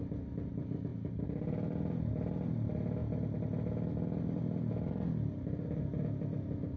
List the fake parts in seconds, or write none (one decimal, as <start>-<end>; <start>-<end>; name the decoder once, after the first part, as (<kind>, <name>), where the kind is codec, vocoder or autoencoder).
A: none

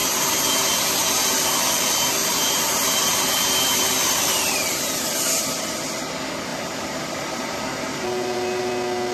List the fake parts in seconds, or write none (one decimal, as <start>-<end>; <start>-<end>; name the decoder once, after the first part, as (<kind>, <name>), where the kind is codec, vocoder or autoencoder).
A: 0.0-0.5 (vocoder, BigVGAN v2); 1.0-4.7; 6.5-8.7

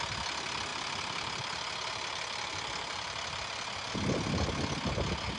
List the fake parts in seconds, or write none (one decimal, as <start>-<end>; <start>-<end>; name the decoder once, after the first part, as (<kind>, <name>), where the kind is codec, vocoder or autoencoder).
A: 0.7-3.9 (vocoder, BigVGAN v2)